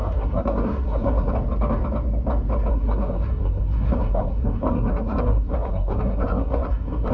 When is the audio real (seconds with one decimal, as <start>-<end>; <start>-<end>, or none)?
1.3-2.7